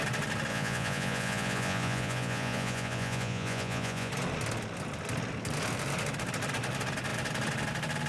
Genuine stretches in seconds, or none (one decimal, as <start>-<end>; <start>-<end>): 0.0-0.5; 4.1-8.1